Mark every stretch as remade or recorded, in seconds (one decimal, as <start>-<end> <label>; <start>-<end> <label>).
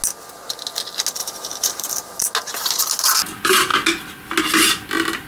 0.0-1.2 recorded; 1.2-2.2 remade; 2.2-5.3 recorded